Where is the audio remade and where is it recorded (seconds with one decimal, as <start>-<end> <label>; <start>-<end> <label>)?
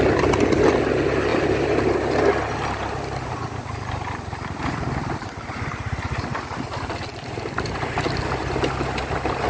0.0-1.3 recorded; 1.3-2.0 remade; 2.0-4.3 recorded; 4.3-5.3 remade; 5.3-7.1 recorded; 7.1-8.1 remade; 8.1-9.5 recorded